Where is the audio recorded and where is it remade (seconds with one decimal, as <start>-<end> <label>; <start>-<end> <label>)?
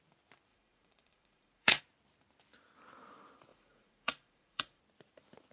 0.0-0.5 recorded; 0.5-1.8 remade; 1.8-3.5 recorded; 3.5-4.8 remade; 4.8-5.5 recorded